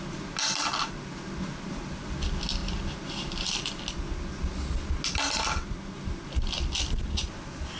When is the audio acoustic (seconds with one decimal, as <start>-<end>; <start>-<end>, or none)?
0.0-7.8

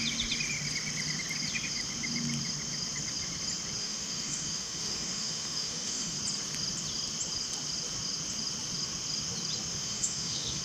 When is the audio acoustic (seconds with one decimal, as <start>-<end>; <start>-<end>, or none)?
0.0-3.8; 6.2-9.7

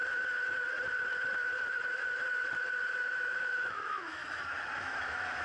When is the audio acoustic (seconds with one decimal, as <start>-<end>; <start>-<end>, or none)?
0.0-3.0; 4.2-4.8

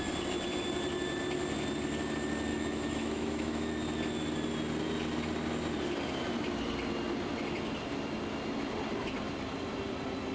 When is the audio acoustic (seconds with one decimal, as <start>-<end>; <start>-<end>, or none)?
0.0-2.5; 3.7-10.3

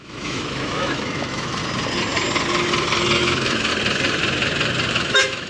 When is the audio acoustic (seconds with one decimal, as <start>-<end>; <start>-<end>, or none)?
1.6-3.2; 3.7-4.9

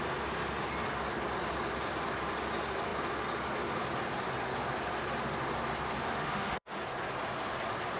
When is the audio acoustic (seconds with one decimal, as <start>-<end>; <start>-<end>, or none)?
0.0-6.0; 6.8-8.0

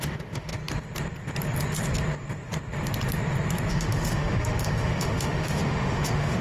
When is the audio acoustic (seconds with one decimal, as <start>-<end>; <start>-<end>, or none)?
0.5-3.7

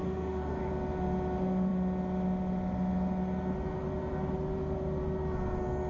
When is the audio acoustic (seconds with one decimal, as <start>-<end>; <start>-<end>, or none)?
0.7-5.9